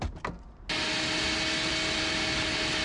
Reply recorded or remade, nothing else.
recorded